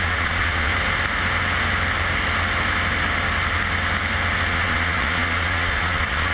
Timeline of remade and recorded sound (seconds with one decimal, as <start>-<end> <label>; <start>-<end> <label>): 0.0-0.7 remade; 0.7-4.5 recorded; 4.5-6.3 remade